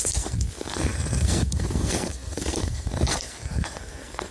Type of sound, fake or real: fake